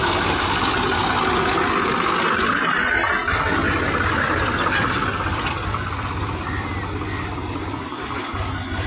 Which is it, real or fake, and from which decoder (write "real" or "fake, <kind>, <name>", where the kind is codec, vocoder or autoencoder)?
real